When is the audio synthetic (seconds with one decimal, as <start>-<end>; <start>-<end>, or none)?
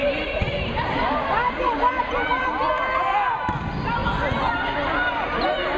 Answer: 0.0-3.4